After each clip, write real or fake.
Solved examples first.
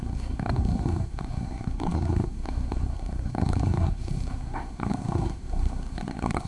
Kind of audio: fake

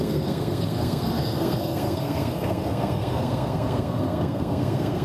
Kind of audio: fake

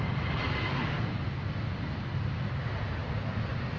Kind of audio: real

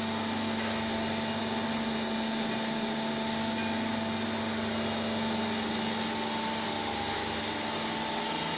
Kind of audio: real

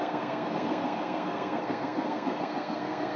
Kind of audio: fake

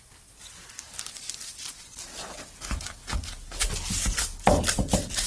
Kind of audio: real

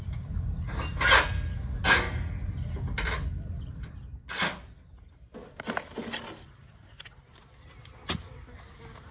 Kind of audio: real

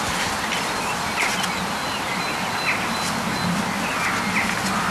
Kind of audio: real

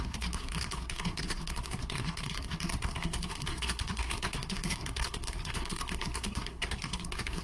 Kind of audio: fake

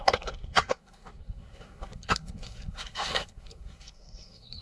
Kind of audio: fake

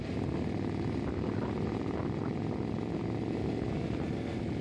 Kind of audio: real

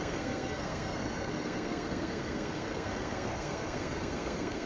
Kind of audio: fake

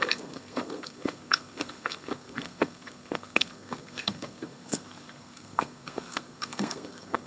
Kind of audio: fake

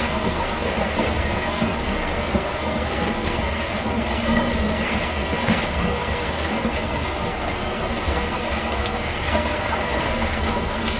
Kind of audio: fake